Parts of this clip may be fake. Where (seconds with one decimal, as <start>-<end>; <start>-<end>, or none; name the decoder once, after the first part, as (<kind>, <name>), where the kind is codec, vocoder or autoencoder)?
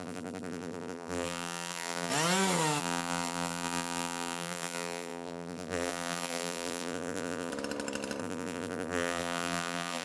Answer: 0.0-2.1 (vocoder, BigVGAN v2); 2.8-7.5; 8.2-10.0